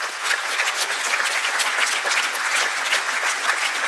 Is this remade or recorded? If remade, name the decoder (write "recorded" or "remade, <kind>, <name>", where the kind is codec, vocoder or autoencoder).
remade, vocoder, Vocos